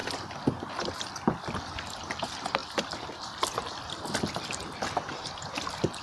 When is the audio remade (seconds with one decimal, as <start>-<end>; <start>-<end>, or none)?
0.0-6.0